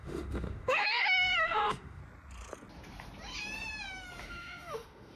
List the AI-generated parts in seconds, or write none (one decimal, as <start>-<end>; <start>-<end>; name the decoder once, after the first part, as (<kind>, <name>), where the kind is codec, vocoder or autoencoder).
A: 0.0-2.0 (autoencoder, DAC-VAE); 4.2-5.2